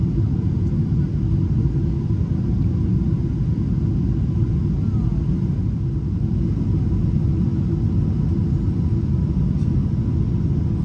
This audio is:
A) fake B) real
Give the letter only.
B